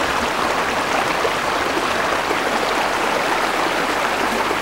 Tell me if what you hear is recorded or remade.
remade